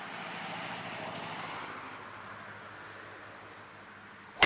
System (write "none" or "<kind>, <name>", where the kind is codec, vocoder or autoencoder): none